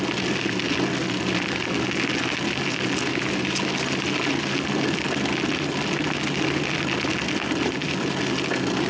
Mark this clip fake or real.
real